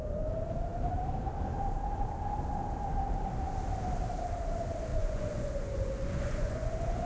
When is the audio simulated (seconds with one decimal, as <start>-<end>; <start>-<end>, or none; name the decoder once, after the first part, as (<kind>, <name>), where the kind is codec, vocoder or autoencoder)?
4.9-7.1 (vocoder, Vocos)